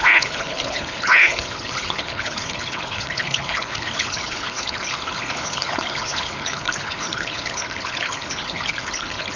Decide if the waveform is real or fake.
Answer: fake